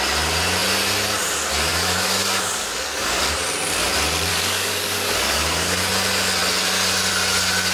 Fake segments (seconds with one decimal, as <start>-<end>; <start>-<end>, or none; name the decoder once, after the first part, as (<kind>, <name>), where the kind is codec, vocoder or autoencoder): 1.7-3.2 (codec, DAC); 4.3-5.9